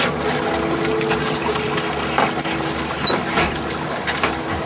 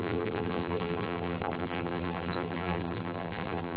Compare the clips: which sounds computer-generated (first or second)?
second